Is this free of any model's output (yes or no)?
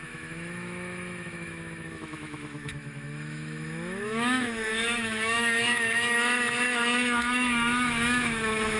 no